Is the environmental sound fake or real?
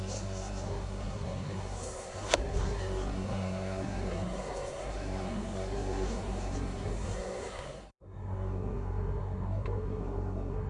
fake